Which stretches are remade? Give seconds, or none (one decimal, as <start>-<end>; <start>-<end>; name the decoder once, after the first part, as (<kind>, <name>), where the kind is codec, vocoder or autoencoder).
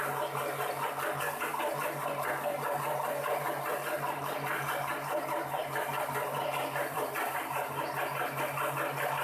5.6-7.8 (vocoder, BigVGAN v2)